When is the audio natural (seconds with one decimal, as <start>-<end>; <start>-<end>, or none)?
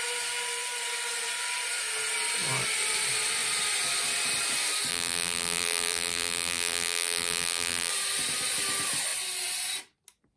0.0-4.9; 7.9-10.4